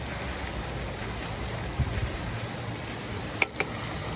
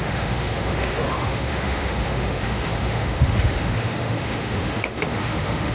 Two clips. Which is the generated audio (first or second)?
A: second